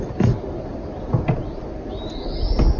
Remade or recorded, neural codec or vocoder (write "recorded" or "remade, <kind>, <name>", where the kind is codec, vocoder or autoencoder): recorded